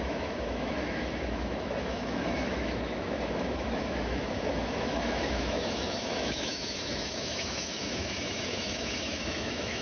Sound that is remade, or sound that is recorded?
remade